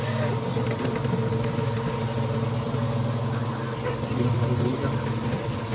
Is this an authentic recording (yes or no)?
yes